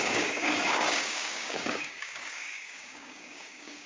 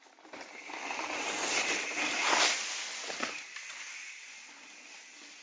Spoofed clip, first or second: first